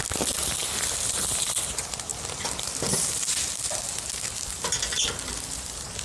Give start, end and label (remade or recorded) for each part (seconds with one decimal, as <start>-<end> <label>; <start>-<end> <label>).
0.0-2.1 remade; 2.1-5.3 recorded; 5.3-6.0 remade